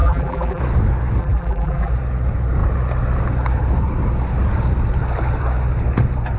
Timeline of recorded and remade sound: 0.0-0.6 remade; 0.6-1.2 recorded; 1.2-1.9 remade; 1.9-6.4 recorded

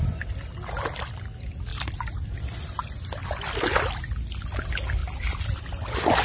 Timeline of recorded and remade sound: 0.0-1.7 recorded; 1.7-2.8 remade; 2.8-3.2 recorded; 3.2-3.8 remade; 3.8-5.0 recorded; 5.0-5.6 remade; 5.6-6.2 recorded

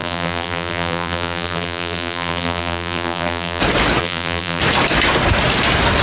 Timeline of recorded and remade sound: 0.0-3.6 remade; 3.6-4.0 recorded; 4.0-4.6 remade; 4.6-6.0 recorded

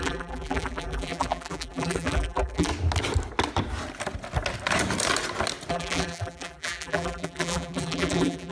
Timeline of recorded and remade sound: 0.0-2.7 remade; 2.7-5.7 recorded; 5.7-8.5 remade

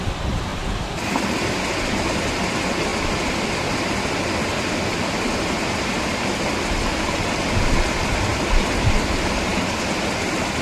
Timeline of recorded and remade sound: 0.0-0.5 recorded; 0.5-1.7 remade; 1.7-2.9 recorded; 2.9-7.7 remade; 7.7-10.6 recorded